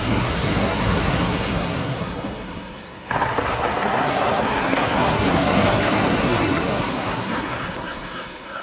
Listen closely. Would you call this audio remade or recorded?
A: remade